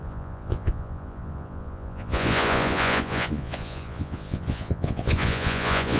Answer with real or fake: fake